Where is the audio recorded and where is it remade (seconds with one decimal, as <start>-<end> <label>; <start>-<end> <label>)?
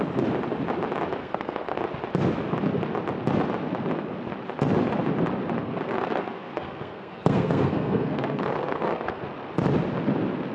0.0-1.2 recorded; 1.2-1.8 remade; 1.8-5.6 recorded; 5.6-9.2 remade; 9.2-10.5 recorded